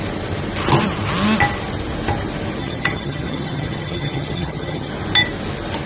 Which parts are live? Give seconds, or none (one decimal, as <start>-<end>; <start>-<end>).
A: 0.0-2.6; 4.9-5.9